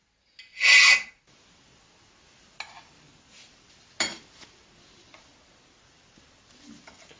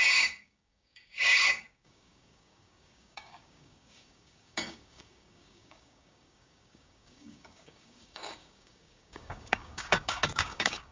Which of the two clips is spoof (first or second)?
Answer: second